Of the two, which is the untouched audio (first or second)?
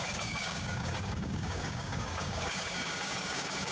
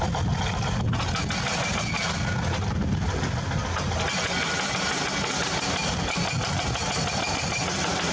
second